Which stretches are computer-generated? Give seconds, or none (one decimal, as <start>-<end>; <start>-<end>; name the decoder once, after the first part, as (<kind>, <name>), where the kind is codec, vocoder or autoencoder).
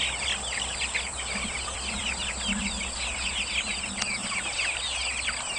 1.1-2.3 (vocoder, BigVGAN v2); 4.2-4.8